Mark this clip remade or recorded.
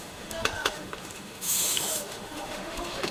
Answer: remade